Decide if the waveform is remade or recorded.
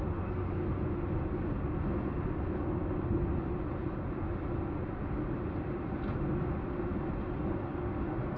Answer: recorded